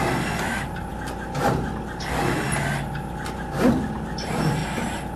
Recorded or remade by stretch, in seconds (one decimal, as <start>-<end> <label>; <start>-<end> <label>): 0.0-5.2 recorded